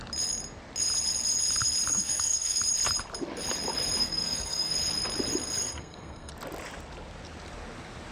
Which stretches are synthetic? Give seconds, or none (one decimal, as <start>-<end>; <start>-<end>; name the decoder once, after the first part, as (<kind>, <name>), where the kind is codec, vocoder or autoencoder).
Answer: 1.9-2.6 (codec, SNAC); 4.0-4.7; 5.6-6.3